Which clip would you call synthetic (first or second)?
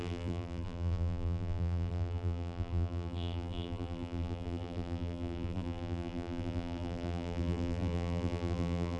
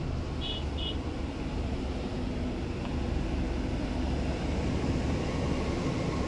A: first